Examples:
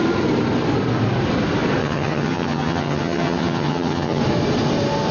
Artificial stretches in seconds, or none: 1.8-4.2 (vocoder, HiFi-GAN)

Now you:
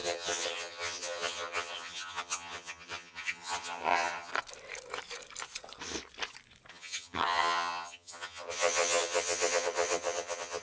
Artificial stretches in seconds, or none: 0.0-4.3 (vocoder, HiFi-GAN); 6.7-10.6

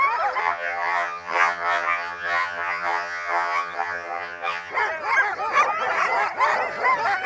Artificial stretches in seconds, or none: 0.4-4.7 (vocoder, HiFi-GAN)

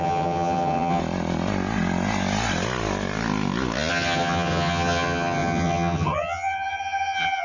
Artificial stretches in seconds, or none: 0.0-1.0 (vocoder, HiFi-GAN); 3.9-7.4

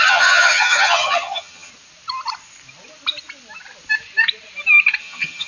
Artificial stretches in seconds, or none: 0.0-1.7 (vocoder, HiFi-GAN); 5.0-5.5

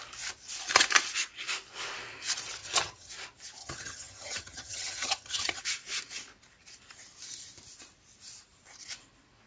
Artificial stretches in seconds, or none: 2.6-3.1 (vocoder, HiFi-GAN); 3.6-5.6

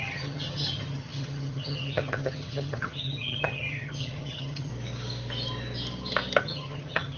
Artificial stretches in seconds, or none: 0.0-4.7 (vocoder, HiFi-GAN); 6.4-7.2